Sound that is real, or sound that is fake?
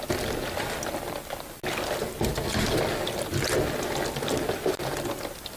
real